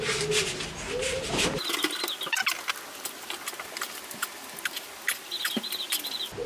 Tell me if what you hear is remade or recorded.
recorded